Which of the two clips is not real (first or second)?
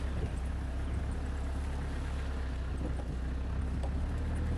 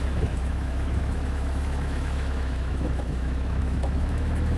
second